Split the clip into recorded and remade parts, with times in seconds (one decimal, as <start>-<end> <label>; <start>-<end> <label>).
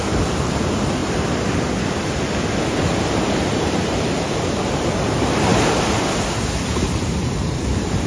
0.0-1.0 remade; 1.0-2.7 recorded; 2.7-8.1 remade